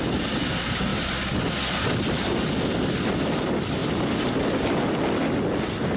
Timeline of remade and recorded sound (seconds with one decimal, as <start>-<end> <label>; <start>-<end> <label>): 0.0-6.0 recorded